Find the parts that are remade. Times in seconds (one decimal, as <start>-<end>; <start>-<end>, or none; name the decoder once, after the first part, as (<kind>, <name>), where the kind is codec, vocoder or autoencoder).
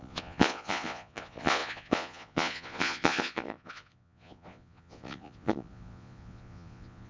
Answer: 0.0-7.1 (vocoder, Vocos)